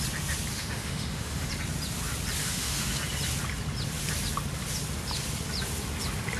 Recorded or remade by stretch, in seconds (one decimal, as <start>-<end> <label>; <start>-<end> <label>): 0.0-0.5 recorded; 0.5-1.5 remade; 1.5-2.4 recorded; 2.4-2.9 remade; 2.9-6.4 recorded